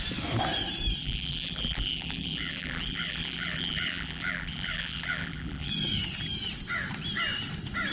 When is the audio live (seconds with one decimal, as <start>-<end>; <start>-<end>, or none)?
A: 0.0-1.0; 5.7-7.9